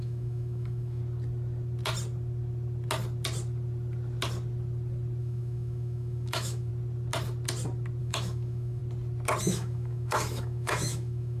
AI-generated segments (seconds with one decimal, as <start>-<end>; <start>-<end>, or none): 0.0-1.0; 5.2-6.7; 8.0-8.8; 9.4-11.4